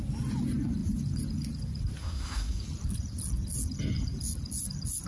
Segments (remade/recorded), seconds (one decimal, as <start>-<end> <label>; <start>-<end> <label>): 0.0-2.0 recorded; 2.0-2.6 remade; 2.6-5.1 recorded